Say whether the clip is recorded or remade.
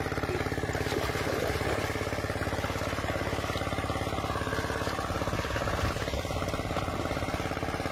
recorded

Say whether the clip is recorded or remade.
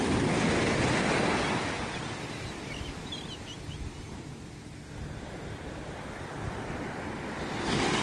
recorded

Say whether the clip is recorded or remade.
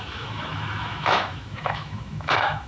remade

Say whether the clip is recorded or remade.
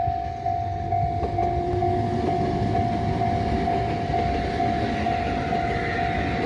recorded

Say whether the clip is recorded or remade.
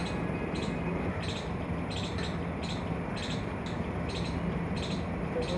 recorded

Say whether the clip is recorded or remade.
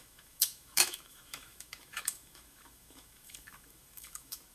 remade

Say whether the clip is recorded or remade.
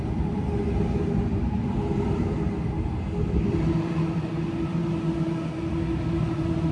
recorded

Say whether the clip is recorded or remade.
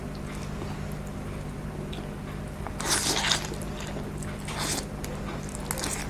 recorded